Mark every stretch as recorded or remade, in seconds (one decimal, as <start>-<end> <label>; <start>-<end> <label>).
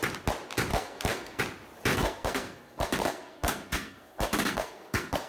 0.0-0.7 recorded; 0.7-1.4 remade; 1.4-1.9 recorded; 1.9-5.3 remade